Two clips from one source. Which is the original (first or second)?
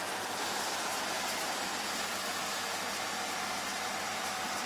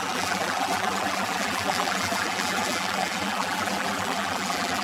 first